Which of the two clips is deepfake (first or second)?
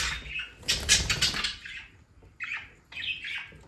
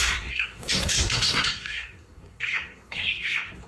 second